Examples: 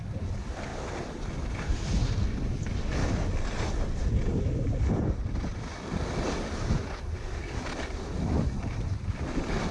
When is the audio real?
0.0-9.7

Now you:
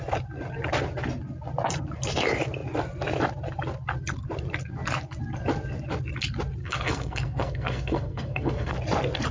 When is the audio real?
0.0-6.6; 8.7-9.3

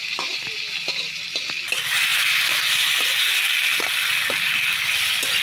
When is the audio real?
0.0-5.4

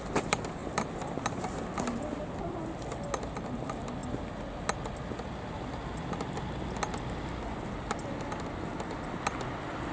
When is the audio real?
0.0-9.9